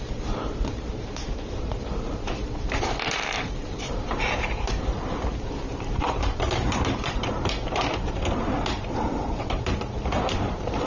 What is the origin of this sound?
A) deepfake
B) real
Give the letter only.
A